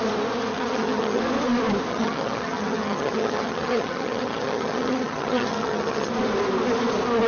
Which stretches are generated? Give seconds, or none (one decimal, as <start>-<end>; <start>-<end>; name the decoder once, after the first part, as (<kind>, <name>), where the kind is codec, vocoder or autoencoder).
0.5-1.2 (vocoder, HiFi-GAN); 1.9-6.1